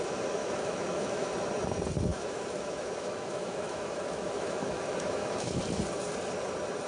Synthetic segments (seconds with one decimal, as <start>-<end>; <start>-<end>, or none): 0.4-1.3; 2.1-5.6